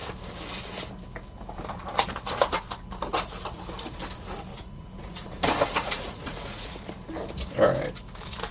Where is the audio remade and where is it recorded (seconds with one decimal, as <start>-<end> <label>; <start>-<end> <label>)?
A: 0.0-4.5 recorded; 4.5-5.3 remade; 5.3-5.8 recorded; 5.8-6.8 remade; 6.8-8.5 recorded